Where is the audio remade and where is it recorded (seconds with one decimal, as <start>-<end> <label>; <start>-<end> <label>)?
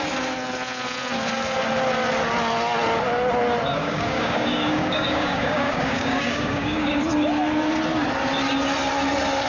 0.0-3.8 recorded; 3.8-7.0 remade; 7.0-9.5 recorded